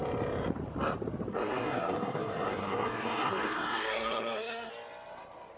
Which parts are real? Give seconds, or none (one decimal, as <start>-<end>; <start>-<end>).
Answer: 0.0-1.3; 4.7-5.6